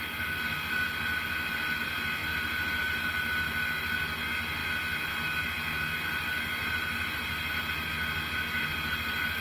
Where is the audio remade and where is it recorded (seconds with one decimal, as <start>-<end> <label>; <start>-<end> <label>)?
0.0-2.2 recorded; 2.2-3.0 remade; 3.0-6.6 recorded; 6.6-7.2 remade; 7.2-9.4 recorded